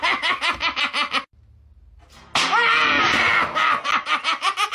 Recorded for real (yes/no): yes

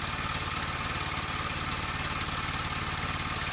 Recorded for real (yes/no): yes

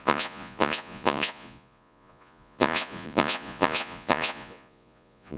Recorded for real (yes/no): no